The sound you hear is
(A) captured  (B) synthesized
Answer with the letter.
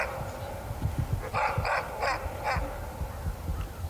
A